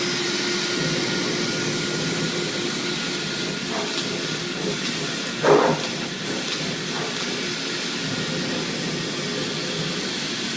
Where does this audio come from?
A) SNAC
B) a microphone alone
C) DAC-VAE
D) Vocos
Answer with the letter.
B